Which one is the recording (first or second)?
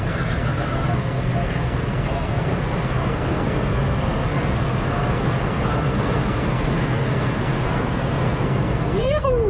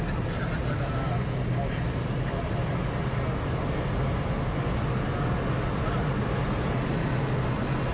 second